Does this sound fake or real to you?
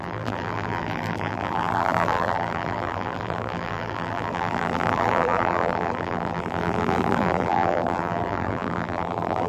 fake